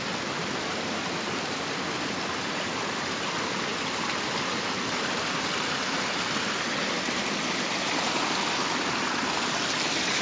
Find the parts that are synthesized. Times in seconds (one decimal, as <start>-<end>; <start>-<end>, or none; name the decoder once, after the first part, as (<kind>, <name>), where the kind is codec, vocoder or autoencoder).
0.4-2.9 (vocoder, BigVGAN v2)